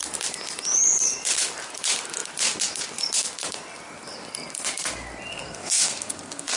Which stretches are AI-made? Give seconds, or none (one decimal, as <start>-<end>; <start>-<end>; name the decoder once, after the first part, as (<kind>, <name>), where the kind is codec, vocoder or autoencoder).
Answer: 5.3-6.6 (codec, SNAC)

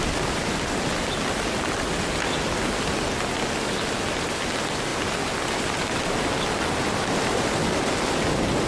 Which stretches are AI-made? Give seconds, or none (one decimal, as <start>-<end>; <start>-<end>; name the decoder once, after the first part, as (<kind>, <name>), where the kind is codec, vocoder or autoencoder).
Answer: none

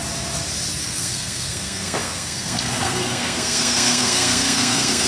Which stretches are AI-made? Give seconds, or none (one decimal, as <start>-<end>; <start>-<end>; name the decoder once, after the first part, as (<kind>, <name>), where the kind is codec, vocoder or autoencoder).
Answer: 0.8-5.1 (codec, SNAC)

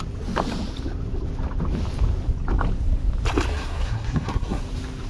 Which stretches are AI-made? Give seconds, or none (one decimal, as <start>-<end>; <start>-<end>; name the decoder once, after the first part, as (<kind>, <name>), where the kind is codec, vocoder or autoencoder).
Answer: 3.5-4.6 (codec, SNAC)

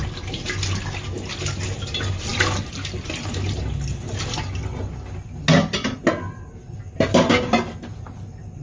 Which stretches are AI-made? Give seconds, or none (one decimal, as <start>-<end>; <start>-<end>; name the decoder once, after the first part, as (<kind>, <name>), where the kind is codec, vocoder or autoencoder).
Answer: none

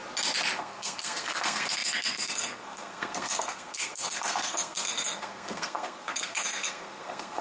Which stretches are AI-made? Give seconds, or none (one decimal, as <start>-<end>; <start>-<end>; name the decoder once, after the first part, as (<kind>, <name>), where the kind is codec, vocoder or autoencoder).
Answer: 0.6-7.4 (codec, SNAC)

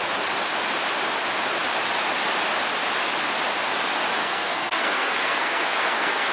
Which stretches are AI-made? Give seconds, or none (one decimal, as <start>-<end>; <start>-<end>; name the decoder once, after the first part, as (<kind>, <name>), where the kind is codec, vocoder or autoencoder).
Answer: 4.2-6.3 (codec, SNAC)